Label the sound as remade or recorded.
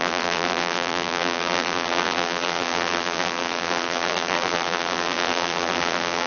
remade